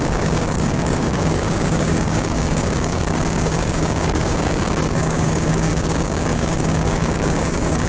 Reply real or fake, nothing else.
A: fake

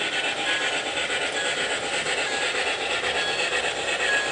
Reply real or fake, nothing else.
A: real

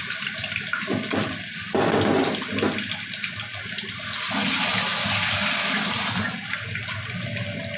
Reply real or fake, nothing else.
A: real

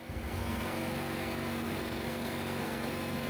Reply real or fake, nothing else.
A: fake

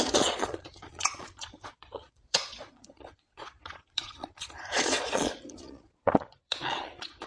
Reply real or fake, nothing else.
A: fake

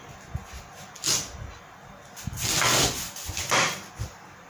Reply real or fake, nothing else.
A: real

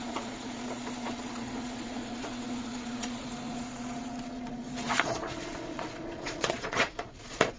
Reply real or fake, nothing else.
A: fake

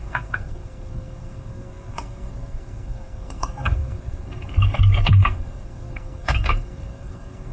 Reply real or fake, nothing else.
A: fake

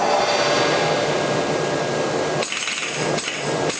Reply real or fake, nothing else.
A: real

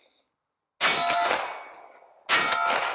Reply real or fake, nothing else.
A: real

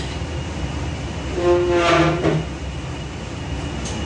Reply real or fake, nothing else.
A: real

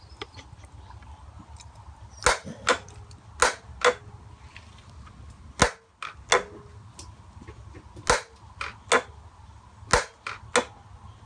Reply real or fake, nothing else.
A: real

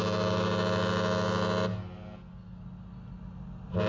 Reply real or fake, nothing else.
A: real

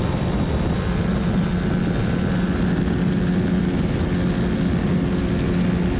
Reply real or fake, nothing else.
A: real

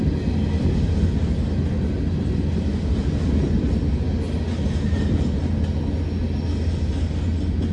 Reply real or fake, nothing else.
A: real